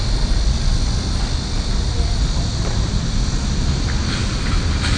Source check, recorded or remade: recorded